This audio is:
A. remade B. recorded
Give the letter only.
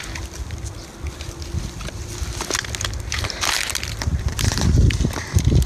B